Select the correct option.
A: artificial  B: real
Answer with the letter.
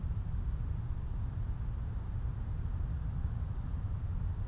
B